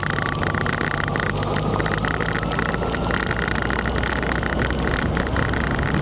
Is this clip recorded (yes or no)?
yes